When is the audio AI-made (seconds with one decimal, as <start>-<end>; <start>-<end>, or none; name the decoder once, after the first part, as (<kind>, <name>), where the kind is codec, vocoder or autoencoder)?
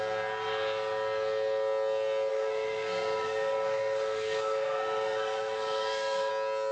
2.3-6.3 (codec, SNAC)